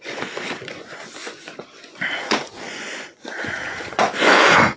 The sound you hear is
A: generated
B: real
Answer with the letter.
A